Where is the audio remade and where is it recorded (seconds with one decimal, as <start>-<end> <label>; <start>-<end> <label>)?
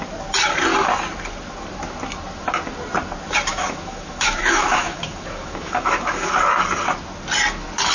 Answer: 0.0-3.5 recorded; 3.5-6.3 remade; 6.3-7.9 recorded